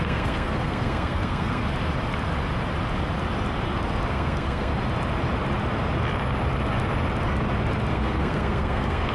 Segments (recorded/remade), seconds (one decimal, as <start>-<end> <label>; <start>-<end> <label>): 0.0-1.6 remade; 1.6-4.1 recorded; 4.1-4.7 remade; 4.7-7.9 recorded; 7.9-9.1 remade